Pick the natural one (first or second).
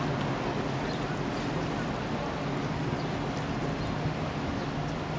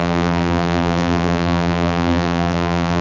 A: first